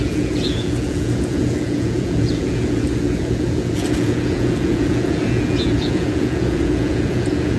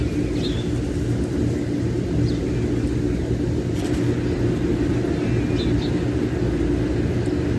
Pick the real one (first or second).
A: second